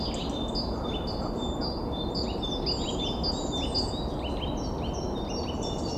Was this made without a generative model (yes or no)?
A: yes